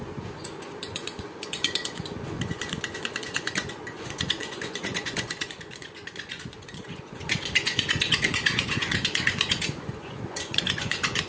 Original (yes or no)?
no